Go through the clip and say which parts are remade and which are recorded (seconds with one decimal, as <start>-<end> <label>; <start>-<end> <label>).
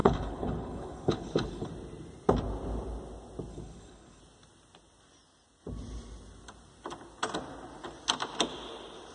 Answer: 0.0-1.7 remade; 1.7-3.5 recorded; 3.5-4.2 remade; 4.2-9.1 recorded